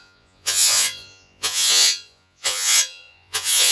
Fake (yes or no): yes